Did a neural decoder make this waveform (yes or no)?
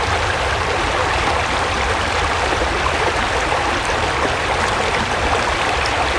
no